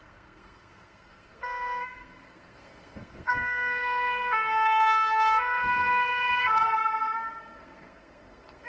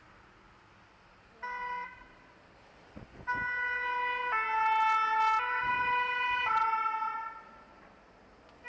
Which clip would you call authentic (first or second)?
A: second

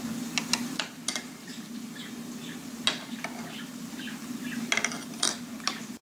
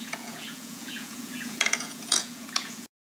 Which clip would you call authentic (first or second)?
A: first